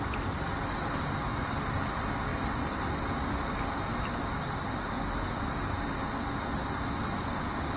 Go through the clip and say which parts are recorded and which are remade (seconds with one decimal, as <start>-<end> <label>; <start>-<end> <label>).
0.0-7.8 recorded